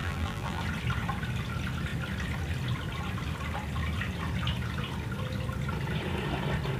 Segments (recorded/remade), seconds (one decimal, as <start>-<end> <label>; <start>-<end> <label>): 0.0-0.6 remade; 0.6-6.8 recorded